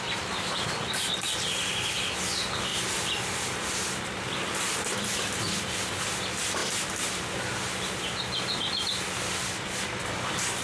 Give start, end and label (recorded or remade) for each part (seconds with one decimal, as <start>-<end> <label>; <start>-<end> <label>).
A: 0.0-10.6 recorded